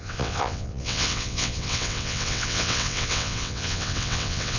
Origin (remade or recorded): remade